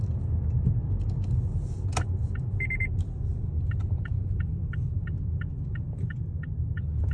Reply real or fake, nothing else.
real